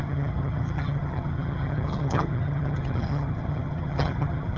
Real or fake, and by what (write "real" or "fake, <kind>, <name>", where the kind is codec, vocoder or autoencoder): fake, vocoder, HiFi-GAN